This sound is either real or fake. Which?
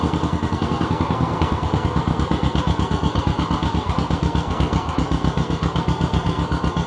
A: fake